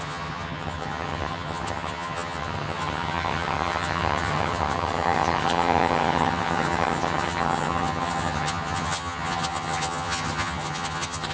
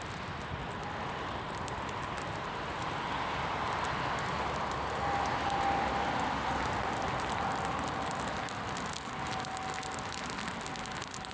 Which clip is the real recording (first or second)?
second